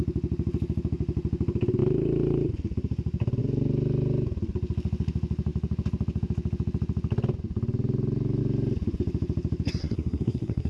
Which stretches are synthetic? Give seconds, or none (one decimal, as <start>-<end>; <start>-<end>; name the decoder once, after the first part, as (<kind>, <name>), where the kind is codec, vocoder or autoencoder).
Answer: 9.8-10.7 (codec, SNAC)